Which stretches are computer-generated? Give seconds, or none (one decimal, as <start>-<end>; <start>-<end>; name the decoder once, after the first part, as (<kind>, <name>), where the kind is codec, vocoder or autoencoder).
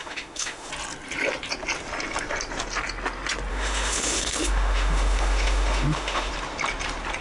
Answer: 0.0-0.7 (autoencoder, DAC-VAE); 3.5-6.3